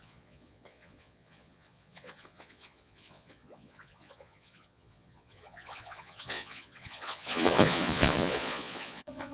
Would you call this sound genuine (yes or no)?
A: no